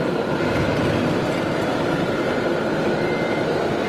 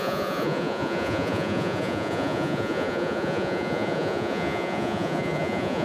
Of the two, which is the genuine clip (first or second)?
first